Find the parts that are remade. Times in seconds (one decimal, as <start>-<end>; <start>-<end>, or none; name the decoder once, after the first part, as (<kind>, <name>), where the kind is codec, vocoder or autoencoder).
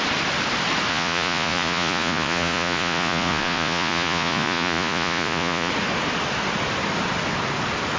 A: 0.9-5.7 (vocoder, Vocos)